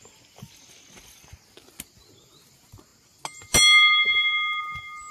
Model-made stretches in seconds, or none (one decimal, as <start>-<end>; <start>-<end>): none